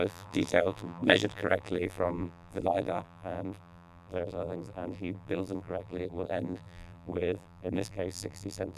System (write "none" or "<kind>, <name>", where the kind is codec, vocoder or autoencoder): vocoder, BigVGAN v2